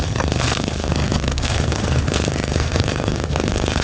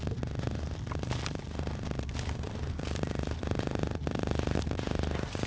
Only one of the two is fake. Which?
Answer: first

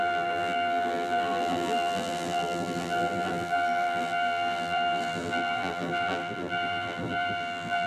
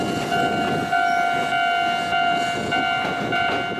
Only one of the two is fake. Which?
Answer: first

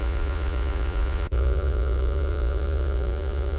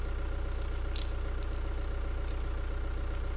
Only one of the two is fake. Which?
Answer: first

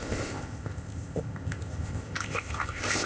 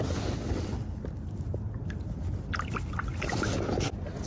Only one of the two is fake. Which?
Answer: first